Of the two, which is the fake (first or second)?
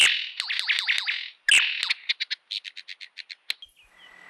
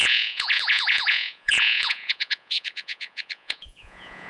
second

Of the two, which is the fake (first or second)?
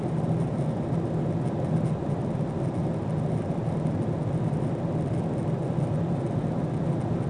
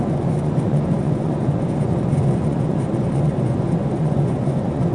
second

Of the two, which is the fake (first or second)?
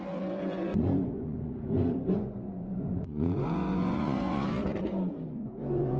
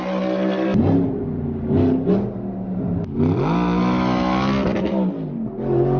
first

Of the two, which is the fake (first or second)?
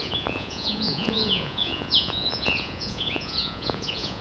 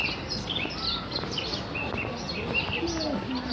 first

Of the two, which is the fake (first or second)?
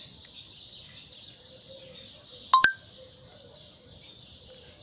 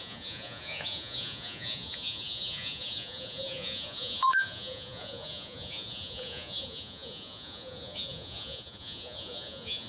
second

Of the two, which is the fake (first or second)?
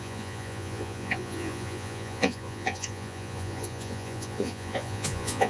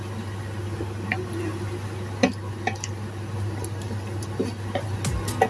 first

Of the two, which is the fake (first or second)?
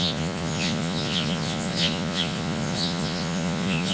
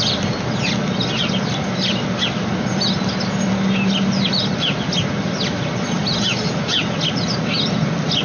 first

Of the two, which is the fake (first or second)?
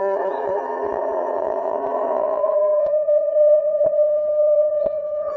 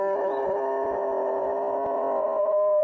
first